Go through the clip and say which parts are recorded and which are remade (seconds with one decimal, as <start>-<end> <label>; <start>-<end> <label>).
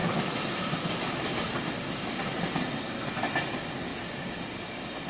0.0-5.1 recorded